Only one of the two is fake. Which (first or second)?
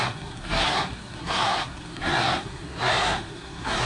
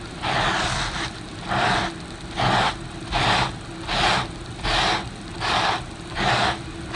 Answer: first